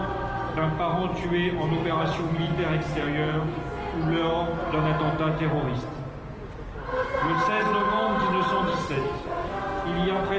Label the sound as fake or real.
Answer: real